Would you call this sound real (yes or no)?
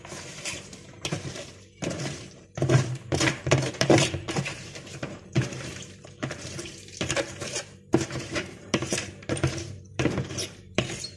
no